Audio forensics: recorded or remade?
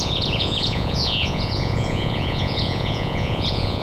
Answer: remade